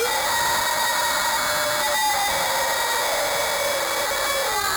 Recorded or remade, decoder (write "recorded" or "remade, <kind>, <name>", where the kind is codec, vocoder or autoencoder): recorded